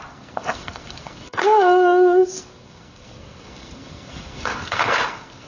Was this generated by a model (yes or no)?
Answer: yes